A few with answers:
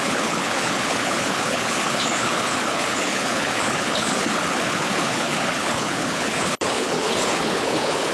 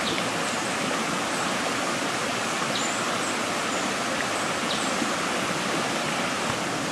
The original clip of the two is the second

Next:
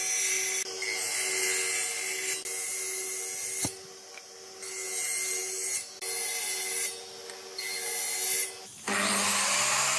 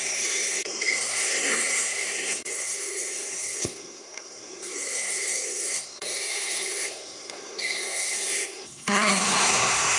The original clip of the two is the first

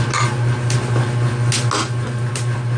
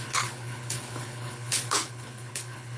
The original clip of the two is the first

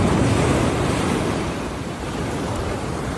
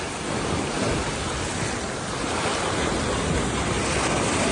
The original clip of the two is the second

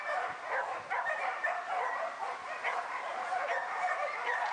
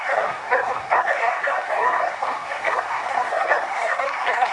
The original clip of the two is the first